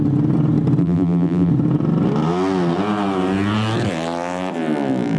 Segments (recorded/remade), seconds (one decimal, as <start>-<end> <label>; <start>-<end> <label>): 0.0-0.8 recorded; 0.8-1.5 remade; 1.5-5.2 recorded